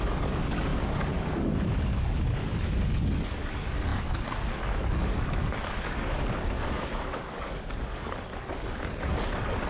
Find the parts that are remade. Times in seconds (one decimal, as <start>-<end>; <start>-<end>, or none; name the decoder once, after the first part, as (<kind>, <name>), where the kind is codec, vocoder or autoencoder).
0.0-9.7 (codec, DAC)